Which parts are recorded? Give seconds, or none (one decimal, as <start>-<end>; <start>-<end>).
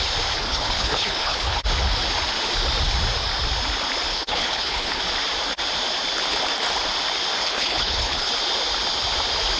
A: 0.0-0.4; 1.6-4.1; 5.0-7.4; 8.3-9.6